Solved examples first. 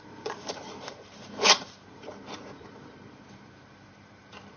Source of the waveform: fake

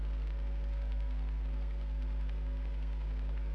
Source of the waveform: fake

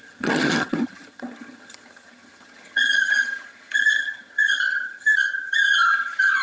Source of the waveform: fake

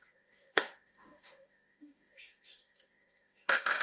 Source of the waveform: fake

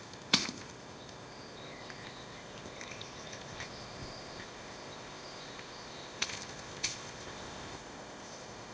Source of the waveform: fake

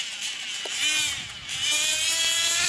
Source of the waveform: fake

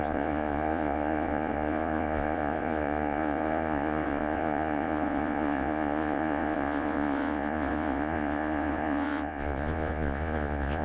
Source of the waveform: fake